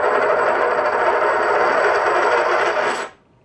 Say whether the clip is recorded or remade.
recorded